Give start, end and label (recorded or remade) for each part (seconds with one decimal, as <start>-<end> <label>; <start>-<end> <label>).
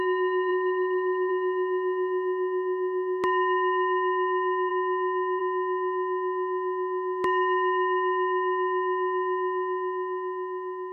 0.0-0.5 recorded; 0.5-1.3 remade; 1.3-10.9 recorded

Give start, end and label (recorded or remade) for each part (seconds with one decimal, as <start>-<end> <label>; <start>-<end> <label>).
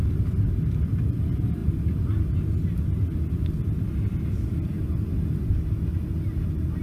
0.0-5.9 recorded; 5.9-6.8 remade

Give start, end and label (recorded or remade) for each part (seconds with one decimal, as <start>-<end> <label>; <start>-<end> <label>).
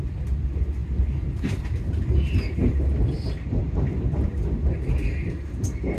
0.0-6.0 recorded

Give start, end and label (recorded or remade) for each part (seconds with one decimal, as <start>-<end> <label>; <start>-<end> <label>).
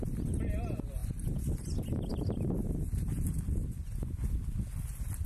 0.0-5.3 recorded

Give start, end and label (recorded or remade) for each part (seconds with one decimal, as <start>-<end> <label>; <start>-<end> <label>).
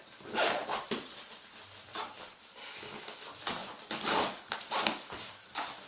0.0-5.9 recorded